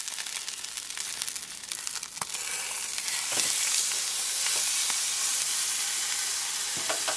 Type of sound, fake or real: real